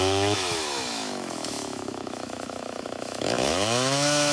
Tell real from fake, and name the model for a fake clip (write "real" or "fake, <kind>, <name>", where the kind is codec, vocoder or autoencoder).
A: fake, autoencoder, DAC-VAE